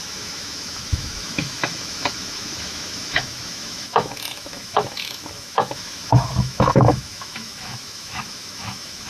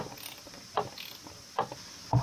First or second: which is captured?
second